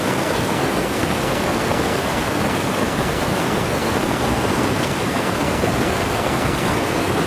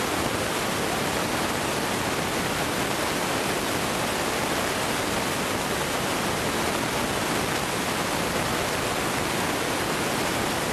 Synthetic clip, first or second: first